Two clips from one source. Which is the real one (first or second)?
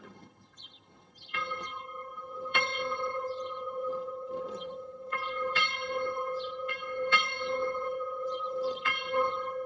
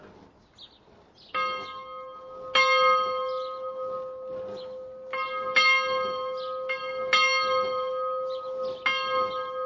second